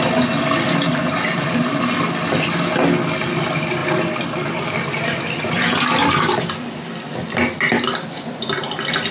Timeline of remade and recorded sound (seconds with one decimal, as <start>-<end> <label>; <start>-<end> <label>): 0.0-9.1 recorded